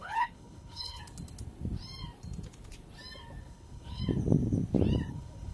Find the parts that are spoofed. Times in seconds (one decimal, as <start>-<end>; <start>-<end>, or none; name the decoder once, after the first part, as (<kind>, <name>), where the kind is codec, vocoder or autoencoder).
0.0-1.0 (codec, HILCodec); 3.4-4.0; 5.1-5.5